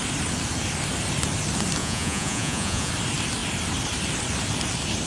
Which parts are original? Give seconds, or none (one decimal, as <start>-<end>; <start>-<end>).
0.0-1.8; 2.9-5.1